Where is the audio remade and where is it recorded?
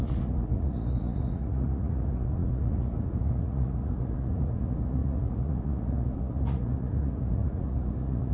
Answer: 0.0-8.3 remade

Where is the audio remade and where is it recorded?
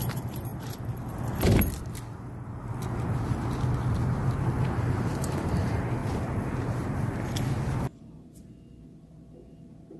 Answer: 0.0-0.5 remade; 0.5-4.8 recorded; 4.8-6.0 remade; 6.0-10.0 recorded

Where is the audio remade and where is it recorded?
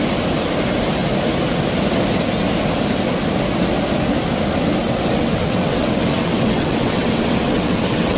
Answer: 0.0-4.8 recorded; 4.8-8.2 remade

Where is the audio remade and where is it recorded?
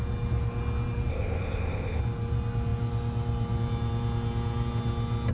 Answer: 0.0-1.1 recorded; 1.1-2.0 remade; 2.0-5.3 recorded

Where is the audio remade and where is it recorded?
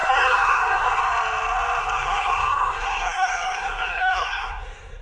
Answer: 0.0-1.0 remade; 1.0-1.8 recorded; 1.8-5.0 remade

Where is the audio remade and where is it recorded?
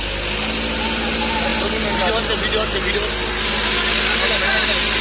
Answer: 0.0-5.0 recorded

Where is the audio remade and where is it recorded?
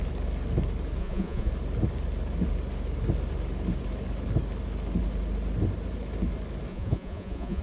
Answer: 0.0-1.0 recorded; 1.0-1.5 remade; 1.5-6.7 recorded; 6.7-7.6 remade